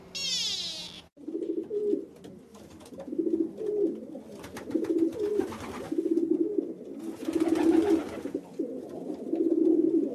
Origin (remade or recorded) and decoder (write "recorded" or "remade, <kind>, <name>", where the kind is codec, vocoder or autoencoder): recorded